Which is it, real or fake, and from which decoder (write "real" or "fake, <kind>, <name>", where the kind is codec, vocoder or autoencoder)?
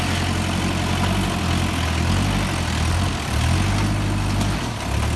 real